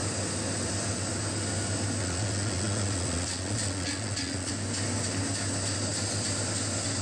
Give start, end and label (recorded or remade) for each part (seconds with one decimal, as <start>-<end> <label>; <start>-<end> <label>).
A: 0.0-2.0 recorded; 2.0-4.5 remade; 4.5-7.0 recorded